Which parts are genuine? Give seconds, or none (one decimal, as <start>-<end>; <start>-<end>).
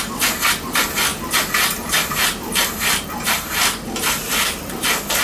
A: 0.0-5.2